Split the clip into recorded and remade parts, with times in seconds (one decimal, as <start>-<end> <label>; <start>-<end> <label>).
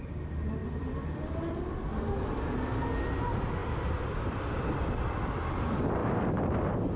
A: 0.0-0.6 recorded; 0.6-1.2 remade; 1.2-3.6 recorded; 3.6-5.2 remade; 5.2-6.0 recorded; 6.0-7.0 remade